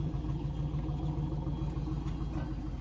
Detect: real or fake real